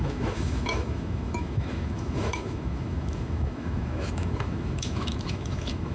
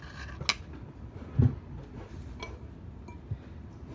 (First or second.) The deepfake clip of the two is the first